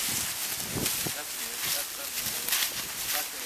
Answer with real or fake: real